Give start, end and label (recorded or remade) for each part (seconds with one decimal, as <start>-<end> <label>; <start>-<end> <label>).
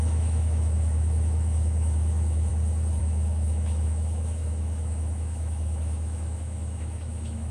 0.0-2.5 remade; 2.5-3.0 recorded; 3.0-7.5 remade